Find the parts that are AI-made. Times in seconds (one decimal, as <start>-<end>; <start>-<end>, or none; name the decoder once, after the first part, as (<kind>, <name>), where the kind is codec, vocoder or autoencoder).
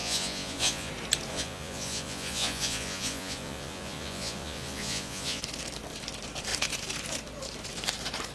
0.0-0.9 (vocoder, Vocos); 1.3-5.4